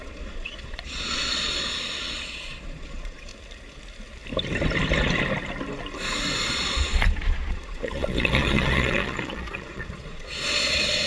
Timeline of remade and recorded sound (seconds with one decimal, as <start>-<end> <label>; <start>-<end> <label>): 0.0-3.3 remade; 3.3-6.5 recorded; 6.5-11.1 remade